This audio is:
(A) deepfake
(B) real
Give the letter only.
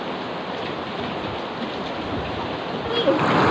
B